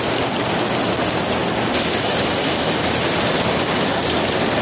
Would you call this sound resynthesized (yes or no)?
no